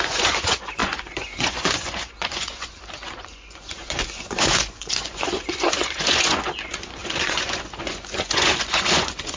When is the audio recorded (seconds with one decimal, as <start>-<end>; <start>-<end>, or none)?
none